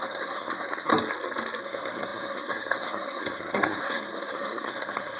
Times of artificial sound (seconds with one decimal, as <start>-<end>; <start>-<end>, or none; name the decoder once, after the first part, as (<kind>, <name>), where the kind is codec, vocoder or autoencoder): 0.0-0.9 (codec, SNAC); 1.6-5.2